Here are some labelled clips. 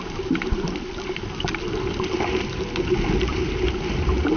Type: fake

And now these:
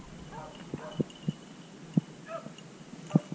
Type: real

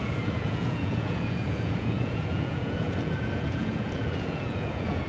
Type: fake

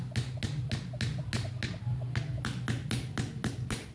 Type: real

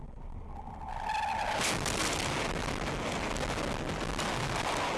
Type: real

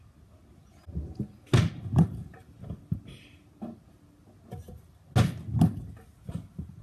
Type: real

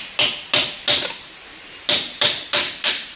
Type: real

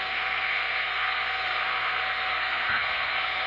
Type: fake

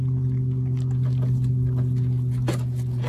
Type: real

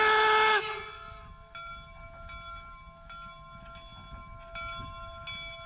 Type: real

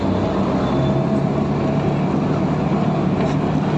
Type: real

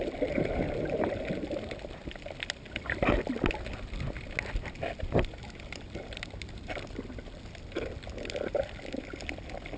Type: real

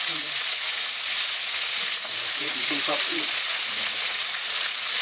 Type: fake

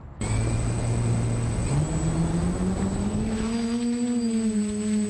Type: real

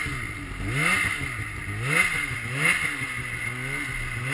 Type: real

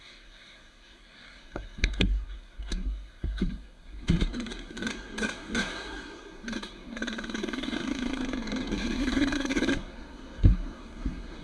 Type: fake